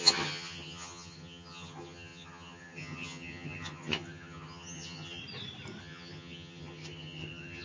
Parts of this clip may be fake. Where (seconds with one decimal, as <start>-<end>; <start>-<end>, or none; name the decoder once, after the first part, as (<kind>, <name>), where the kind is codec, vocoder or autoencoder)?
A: 0.0-5.2 (vocoder, HiFi-GAN); 5.8-7.6